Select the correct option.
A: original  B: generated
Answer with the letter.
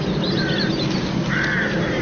A